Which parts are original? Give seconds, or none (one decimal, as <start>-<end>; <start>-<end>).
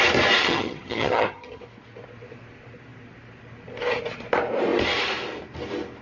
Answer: 0.0-0.4; 1.6-6.0